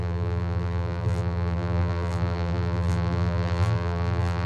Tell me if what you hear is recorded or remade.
remade